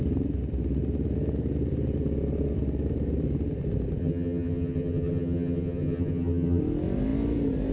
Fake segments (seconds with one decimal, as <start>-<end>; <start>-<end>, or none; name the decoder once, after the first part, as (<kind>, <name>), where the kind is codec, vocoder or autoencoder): 4.0-6.6 (vocoder, HiFi-GAN)